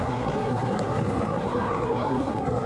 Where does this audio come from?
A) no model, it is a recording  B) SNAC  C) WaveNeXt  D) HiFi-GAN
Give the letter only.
B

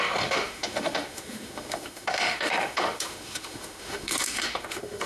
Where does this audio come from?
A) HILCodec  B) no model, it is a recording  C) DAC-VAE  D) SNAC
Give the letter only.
C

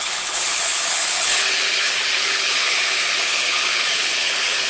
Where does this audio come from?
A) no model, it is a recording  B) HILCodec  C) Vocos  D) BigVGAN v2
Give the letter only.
B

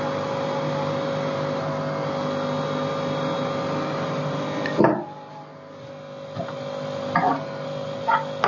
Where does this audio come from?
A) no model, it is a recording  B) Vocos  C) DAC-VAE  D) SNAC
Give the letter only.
A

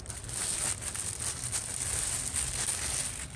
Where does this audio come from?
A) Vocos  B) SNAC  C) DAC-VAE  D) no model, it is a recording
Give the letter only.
D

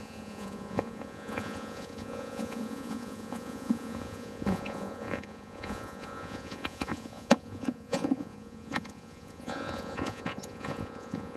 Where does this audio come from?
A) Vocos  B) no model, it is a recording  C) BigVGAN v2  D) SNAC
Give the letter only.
A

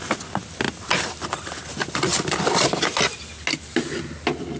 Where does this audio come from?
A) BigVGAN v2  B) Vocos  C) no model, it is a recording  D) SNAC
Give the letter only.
C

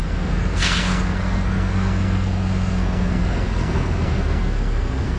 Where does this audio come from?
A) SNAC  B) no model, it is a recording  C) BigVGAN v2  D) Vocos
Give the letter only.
A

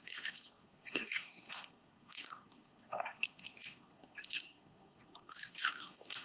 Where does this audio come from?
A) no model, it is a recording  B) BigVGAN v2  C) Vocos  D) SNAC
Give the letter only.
D